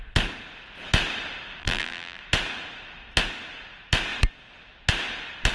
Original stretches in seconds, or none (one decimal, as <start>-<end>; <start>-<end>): 0.0-1.6; 2.2-5.5